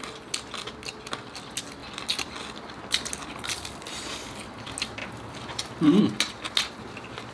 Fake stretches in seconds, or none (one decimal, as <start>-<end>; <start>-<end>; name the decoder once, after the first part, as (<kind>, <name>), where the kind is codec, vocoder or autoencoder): none

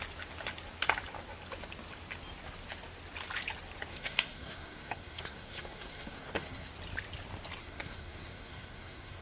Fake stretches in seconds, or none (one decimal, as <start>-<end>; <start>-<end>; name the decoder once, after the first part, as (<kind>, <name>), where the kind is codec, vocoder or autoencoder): 3.9-6.7 (codec, SNAC); 7.6-9.2

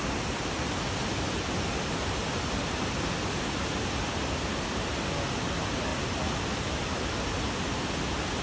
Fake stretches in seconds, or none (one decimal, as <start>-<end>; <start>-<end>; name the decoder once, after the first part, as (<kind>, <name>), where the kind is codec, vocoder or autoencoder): none

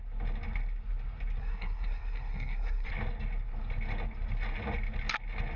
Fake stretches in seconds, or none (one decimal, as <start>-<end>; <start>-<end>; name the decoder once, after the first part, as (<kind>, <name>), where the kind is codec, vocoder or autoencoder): 1.4-2.9 (codec, SNAC)

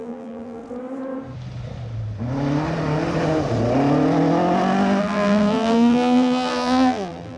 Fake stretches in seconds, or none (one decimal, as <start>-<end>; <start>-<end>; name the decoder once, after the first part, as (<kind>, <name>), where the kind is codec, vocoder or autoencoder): 0.0-0.6 (vocoder, BigVGAN v2); 5.0-7.4

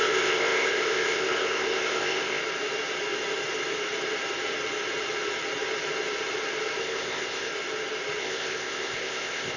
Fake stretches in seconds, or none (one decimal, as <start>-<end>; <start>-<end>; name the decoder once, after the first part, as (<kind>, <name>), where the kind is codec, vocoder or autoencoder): 0.0-2.4 (codec, ZipCodec); 6.8-7.5; 8.2-9.6

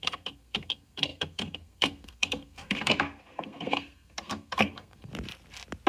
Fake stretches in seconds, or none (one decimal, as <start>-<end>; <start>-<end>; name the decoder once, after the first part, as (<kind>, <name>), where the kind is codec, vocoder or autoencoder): 0.0-5.1 (codec, SNAC)